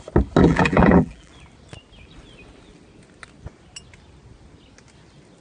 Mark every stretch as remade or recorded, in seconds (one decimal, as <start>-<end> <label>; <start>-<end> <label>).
0.0-0.4 recorded; 0.4-1.3 remade; 1.3-5.4 recorded